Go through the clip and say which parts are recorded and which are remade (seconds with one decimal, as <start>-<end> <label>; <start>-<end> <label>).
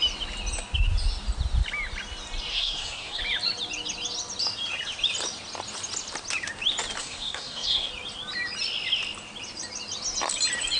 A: 0.0-2.5 recorded; 2.5-3.2 remade; 3.2-7.0 recorded; 7.0-7.9 remade; 7.9-10.8 recorded